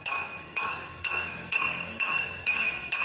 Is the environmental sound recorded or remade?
remade